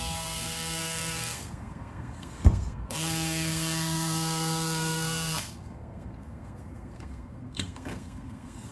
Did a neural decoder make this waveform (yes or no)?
yes